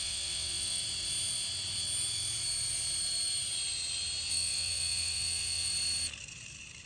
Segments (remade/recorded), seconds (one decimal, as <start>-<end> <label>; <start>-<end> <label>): 0.0-0.8 remade; 0.8-4.3 recorded; 4.3-5.7 remade; 5.7-6.9 recorded